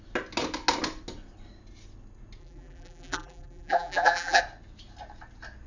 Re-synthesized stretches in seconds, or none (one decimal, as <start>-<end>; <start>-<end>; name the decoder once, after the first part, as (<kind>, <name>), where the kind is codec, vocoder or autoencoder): 2.4-4.4 (vocoder, BigVGAN v2)